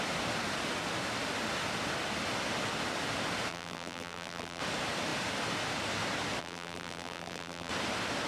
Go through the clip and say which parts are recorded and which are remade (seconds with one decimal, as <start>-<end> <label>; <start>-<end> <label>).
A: 0.0-3.5 recorded; 3.5-4.6 remade; 4.6-6.4 recorded; 6.4-7.7 remade; 7.7-8.3 recorded